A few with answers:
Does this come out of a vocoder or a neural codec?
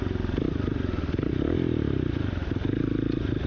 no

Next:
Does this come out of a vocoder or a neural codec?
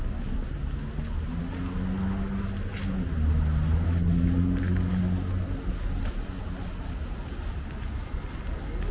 no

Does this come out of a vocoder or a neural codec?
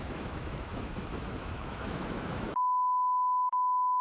yes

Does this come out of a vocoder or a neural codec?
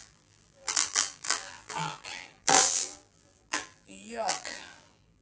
yes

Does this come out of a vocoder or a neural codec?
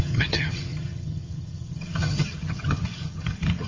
yes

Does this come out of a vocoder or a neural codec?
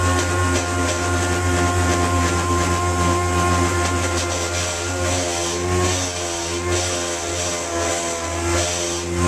no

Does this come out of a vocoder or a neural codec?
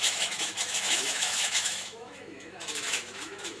yes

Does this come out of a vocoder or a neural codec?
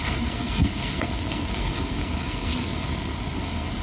yes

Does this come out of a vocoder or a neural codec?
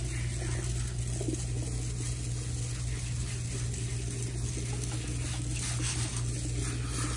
no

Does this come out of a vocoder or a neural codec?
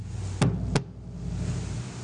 no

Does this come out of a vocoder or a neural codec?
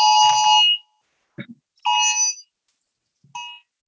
no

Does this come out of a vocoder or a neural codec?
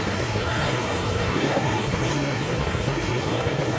yes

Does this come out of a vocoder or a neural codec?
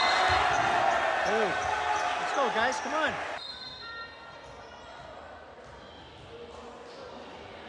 no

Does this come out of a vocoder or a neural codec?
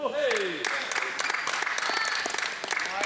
no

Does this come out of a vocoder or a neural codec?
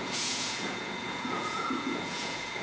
yes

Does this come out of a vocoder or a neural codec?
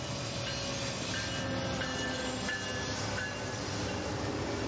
no